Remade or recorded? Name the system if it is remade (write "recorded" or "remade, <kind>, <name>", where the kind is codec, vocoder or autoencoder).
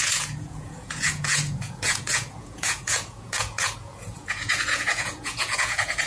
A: remade, vocoder, Vocos